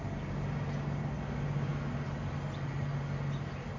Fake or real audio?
real